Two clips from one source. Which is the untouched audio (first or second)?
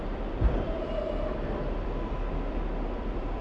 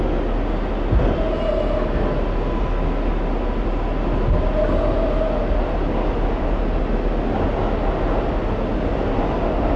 second